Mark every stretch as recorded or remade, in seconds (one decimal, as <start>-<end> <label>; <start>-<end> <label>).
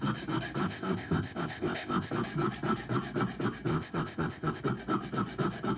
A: 0.0-0.6 recorded; 0.6-2.1 remade; 2.1-3.7 recorded; 3.7-4.6 remade; 4.6-5.8 recorded